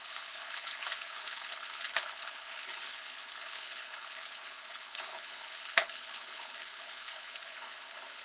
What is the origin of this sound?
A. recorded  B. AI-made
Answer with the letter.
B